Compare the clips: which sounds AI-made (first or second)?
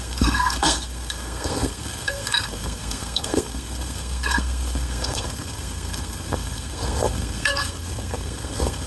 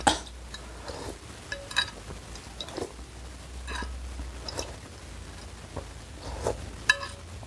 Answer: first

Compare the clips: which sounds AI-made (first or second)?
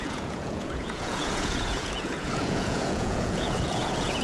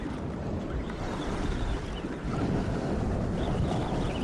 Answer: first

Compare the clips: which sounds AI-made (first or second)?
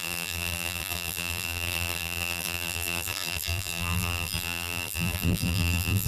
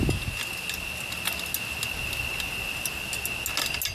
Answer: first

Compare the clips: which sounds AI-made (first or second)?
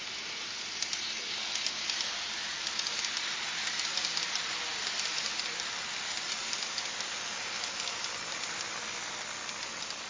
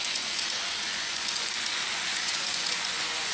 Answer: second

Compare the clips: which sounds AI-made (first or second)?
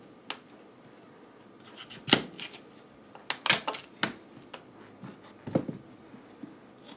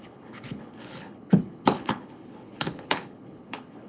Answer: second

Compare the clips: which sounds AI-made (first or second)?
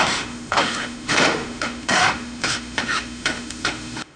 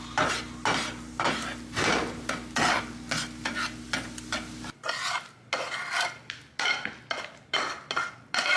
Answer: first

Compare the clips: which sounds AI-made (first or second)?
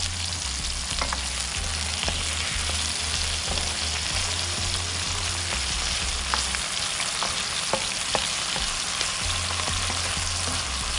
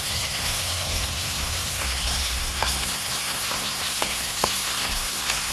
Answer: second